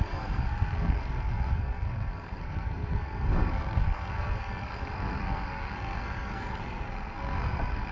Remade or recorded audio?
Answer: remade